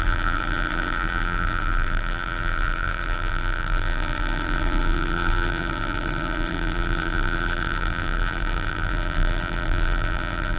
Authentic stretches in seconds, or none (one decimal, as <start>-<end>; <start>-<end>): none